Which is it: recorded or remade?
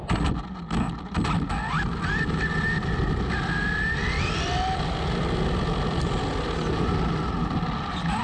recorded